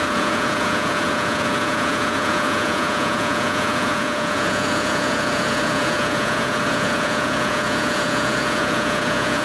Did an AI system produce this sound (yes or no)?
yes